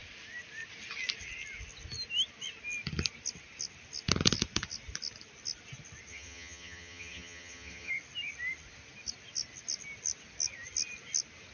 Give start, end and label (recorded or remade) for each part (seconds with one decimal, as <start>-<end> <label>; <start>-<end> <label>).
0.0-6.1 recorded; 6.1-7.9 remade; 7.9-11.5 recorded